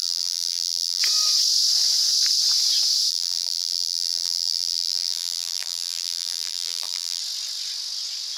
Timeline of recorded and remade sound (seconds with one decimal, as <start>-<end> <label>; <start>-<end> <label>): 0.0-1.0 remade; 1.0-3.1 recorded; 3.1-7.2 remade; 7.2-8.4 recorded